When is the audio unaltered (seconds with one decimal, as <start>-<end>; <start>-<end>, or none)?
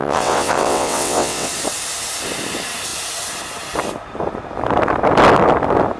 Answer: 1.5-6.0